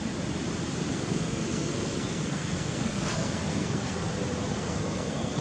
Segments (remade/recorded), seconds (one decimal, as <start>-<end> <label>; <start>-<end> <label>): 0.0-0.9 recorded; 0.9-4.1 remade; 4.1-4.5 recorded; 4.5-5.4 remade